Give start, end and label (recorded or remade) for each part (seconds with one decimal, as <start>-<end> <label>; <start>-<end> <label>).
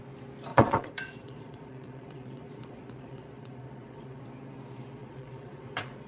0.0-0.5 recorded; 0.5-4.2 remade; 4.2-5.0 recorded; 5.0-6.1 remade